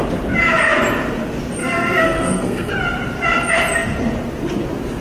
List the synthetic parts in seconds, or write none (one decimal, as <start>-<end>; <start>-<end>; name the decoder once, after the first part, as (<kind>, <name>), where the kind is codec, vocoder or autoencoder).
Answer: 1.6-2.7 (codec, SNAC)

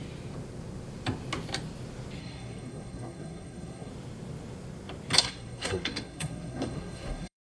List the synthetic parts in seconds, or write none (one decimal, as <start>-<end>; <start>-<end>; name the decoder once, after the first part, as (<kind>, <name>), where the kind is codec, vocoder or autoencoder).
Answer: 2.2-3.9 (codec, SNAC); 5.2-7.5